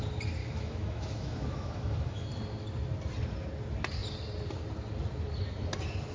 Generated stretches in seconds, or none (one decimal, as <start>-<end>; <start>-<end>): 0.4-2.3

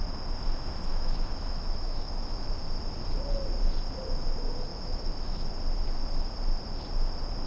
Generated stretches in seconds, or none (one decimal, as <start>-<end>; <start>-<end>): 0.9-2.5; 4.7-5.5